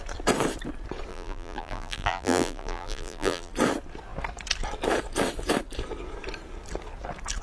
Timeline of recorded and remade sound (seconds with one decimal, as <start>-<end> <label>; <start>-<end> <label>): 0.0-1.1 recorded; 1.1-3.5 remade; 3.5-7.4 recorded